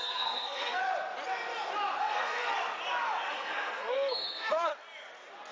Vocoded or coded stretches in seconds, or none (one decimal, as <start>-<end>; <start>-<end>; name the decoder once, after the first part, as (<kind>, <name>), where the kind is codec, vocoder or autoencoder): 0.0-0.8 (codec, SNAC); 2.0-2.5; 3.3-4.7